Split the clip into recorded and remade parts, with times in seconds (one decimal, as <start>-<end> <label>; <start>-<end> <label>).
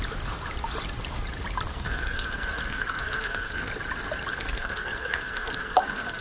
0.0-1.7 recorded; 1.7-3.7 remade; 3.7-4.3 recorded; 4.3-6.2 remade